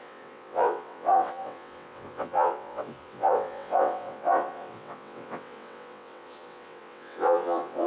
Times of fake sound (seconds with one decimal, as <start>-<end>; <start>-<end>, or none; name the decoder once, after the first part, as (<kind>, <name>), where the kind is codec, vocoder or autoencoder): 0.0-7.9 (vocoder, WaveNeXt)